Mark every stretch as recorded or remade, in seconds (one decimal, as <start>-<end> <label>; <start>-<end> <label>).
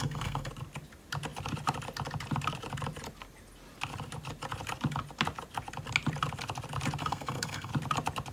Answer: 0.0-0.5 remade; 0.5-7.0 recorded; 7.0-7.7 remade; 7.7-8.3 recorded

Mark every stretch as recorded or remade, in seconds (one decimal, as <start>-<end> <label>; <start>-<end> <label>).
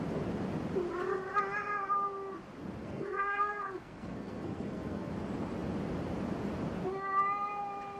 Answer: 0.0-2.8 recorded; 2.8-5.1 remade; 5.1-8.0 recorded